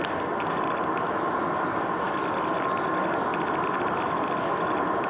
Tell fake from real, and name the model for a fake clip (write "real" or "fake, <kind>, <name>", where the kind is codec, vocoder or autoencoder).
real